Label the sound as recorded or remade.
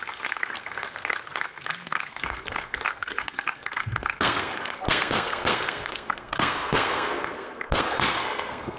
remade